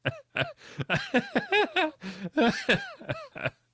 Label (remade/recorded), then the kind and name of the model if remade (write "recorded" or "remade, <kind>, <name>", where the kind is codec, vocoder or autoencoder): recorded